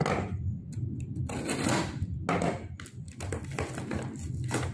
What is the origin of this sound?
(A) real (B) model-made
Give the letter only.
A